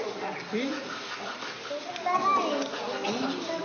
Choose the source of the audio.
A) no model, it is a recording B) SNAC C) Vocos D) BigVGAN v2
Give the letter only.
A